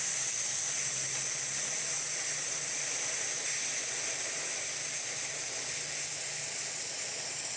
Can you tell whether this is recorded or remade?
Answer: recorded